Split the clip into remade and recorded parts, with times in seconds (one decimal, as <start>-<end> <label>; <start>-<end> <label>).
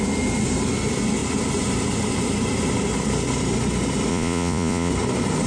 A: 0.0-4.1 recorded; 4.1-4.9 remade; 4.9-5.5 recorded